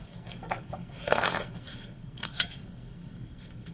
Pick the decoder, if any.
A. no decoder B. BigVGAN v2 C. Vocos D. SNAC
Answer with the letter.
D